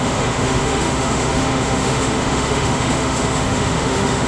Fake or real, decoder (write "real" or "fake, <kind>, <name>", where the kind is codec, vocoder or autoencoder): fake, autoencoder, DAC-VAE